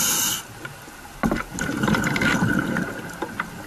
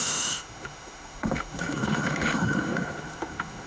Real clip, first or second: first